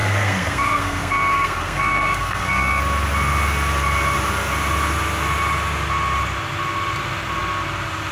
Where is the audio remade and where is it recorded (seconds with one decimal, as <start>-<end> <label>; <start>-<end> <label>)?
0.0-2.8 remade; 2.8-8.1 recorded